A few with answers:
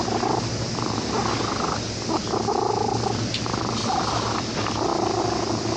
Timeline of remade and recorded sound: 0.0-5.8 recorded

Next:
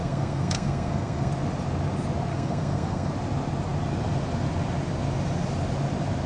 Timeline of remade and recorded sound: 0.0-1.3 remade; 1.3-2.3 recorded; 2.3-3.1 remade; 3.1-6.3 recorded

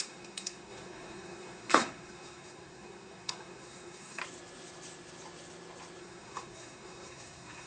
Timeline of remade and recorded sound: 0.0-4.2 remade; 4.2-6.0 recorded; 6.0-7.7 remade

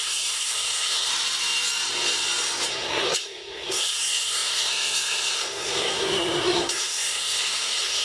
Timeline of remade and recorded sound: 0.0-1.1 remade; 1.1-2.7 recorded; 2.7-8.0 remade

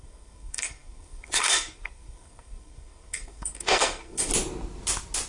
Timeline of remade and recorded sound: 0.0-4.3 remade; 4.3-5.3 recorded